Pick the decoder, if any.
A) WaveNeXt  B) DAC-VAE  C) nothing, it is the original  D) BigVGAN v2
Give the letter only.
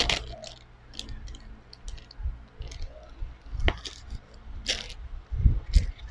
C